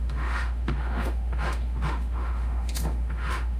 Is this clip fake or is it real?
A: fake